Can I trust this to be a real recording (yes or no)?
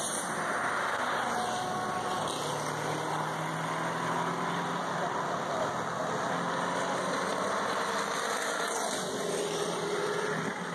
yes